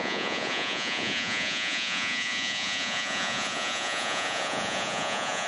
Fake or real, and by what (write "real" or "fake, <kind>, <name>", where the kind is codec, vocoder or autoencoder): fake, vocoder, Vocos